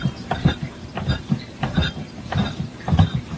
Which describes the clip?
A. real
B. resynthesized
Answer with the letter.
B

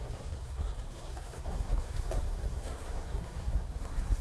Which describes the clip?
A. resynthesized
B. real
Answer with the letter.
A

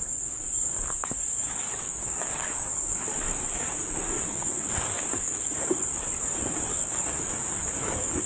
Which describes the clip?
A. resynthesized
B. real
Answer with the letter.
A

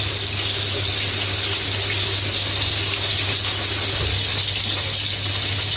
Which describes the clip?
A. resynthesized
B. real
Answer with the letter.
B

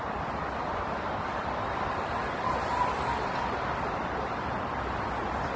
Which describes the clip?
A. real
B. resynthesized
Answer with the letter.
A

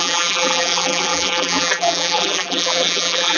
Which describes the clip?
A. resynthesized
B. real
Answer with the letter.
A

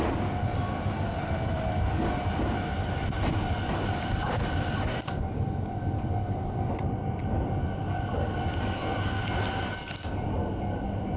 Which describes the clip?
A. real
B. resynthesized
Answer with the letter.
A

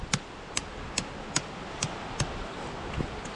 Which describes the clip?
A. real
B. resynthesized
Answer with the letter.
A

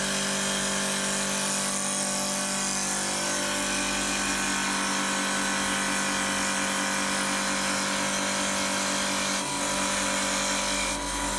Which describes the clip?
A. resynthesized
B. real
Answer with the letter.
B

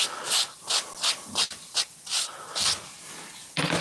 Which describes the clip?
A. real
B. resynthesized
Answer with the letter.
A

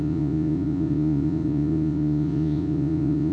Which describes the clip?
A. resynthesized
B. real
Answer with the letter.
A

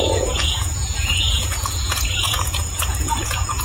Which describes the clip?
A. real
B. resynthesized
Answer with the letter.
B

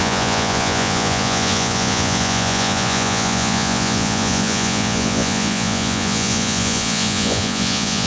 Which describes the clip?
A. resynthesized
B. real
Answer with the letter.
A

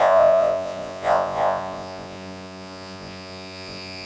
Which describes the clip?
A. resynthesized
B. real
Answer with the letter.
A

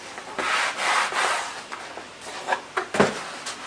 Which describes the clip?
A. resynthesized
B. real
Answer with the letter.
B